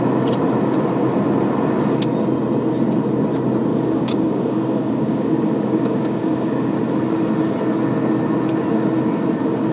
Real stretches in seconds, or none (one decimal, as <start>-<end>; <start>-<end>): 0.0-3.7; 6.8-9.7